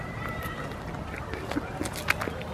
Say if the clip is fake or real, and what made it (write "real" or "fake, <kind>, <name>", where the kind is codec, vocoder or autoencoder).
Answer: real